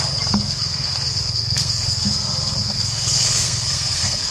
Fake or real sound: fake